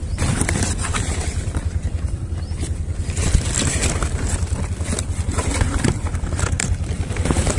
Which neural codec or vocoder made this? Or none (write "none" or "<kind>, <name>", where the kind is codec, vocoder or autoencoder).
vocoder, BigVGAN v2